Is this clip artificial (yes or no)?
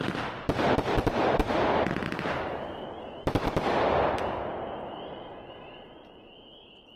no